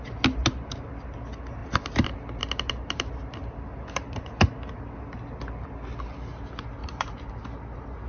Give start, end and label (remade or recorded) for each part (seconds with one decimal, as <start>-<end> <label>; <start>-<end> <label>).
0.0-1.6 recorded; 1.6-2.4 remade; 2.4-6.8 recorded; 6.8-7.4 remade; 7.4-8.1 recorded